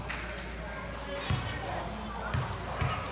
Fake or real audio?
real